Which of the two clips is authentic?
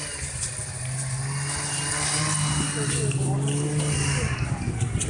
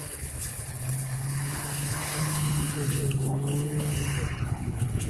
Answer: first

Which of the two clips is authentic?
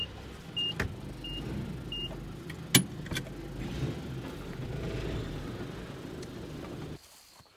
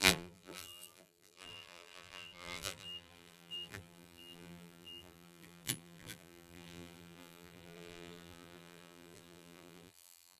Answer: first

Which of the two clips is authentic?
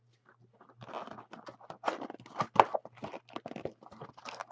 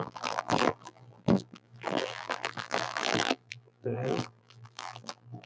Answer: first